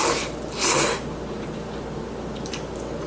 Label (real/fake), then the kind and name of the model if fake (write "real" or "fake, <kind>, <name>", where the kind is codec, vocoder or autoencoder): real